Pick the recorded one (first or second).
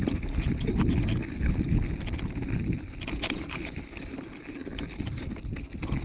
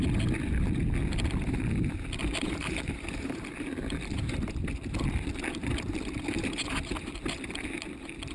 first